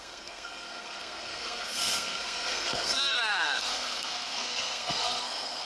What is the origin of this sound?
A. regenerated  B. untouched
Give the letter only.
A